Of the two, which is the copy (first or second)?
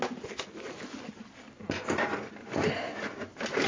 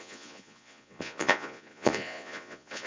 second